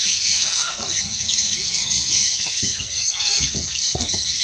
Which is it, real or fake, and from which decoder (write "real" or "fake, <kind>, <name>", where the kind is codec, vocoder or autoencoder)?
fake, codec, SNAC